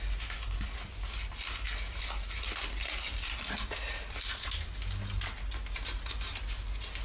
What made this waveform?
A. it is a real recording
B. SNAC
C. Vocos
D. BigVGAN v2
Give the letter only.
A